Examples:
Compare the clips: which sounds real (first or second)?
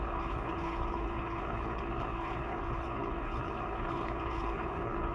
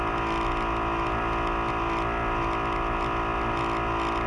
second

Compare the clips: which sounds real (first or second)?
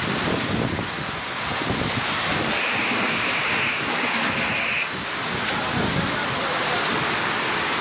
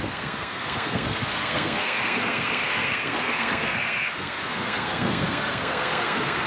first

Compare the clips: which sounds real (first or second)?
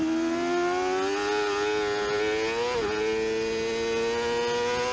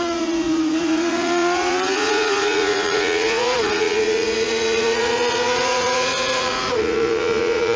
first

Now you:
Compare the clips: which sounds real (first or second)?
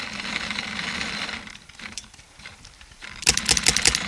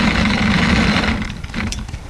first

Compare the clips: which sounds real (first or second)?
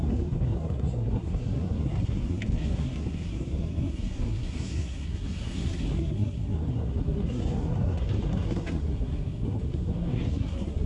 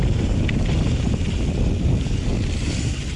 second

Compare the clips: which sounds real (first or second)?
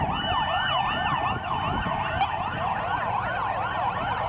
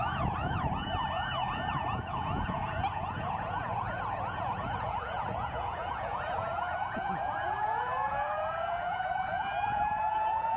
first